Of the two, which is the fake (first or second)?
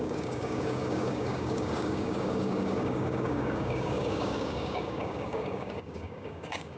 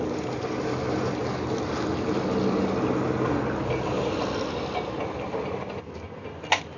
first